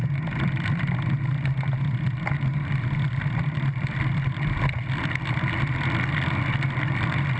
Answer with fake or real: real